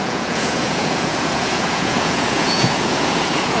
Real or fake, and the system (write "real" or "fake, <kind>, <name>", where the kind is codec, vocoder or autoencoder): fake, vocoder, Vocos